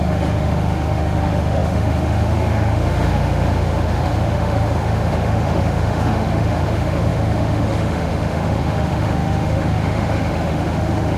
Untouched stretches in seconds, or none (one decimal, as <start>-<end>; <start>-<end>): none